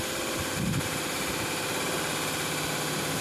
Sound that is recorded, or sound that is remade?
recorded